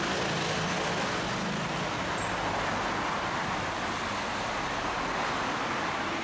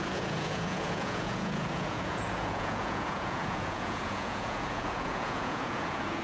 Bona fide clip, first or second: first